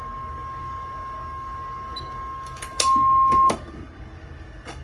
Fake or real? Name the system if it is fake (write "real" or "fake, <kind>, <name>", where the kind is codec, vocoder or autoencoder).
fake, codec, DAC